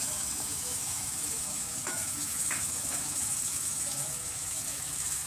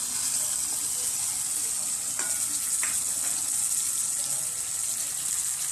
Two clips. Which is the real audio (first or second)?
second